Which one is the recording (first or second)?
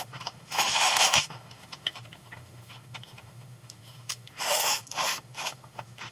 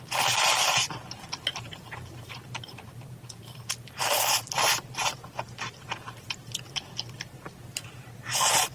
second